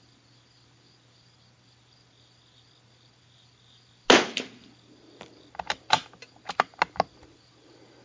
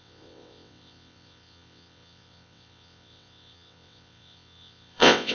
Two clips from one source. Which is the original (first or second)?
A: first